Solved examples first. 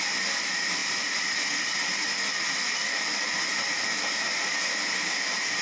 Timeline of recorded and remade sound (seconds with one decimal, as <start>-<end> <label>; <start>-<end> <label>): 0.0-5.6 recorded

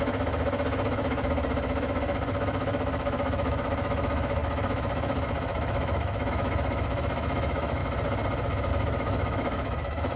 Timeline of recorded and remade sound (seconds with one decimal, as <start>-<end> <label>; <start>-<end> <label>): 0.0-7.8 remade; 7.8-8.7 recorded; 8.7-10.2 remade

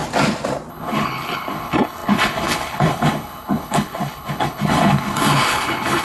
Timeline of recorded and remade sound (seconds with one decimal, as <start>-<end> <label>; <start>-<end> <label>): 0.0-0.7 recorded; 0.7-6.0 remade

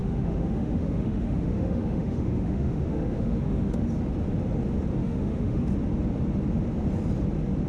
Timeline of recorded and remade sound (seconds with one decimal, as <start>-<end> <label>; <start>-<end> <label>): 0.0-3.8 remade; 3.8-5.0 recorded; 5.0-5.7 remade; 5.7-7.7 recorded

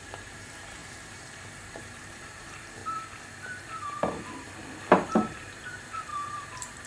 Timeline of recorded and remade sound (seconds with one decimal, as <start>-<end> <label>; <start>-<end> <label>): 0.0-2.8 remade; 2.8-4.9 recorded; 4.9-6.9 remade

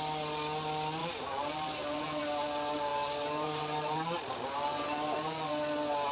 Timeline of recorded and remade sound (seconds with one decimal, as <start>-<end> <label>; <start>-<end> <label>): 0.0-1.0 recorded; 1.0-2.2 remade; 2.2-2.9 recorded; 2.9-5.5 remade; 5.5-6.1 recorded